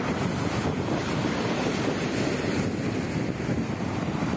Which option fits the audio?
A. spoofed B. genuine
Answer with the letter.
B